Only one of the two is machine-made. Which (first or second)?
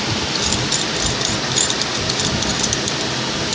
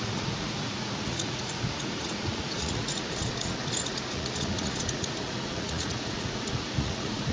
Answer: second